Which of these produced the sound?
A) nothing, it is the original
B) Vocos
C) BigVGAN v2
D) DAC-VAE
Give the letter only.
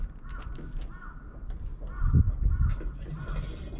A